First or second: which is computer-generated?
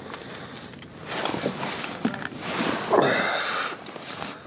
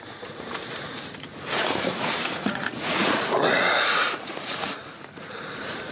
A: second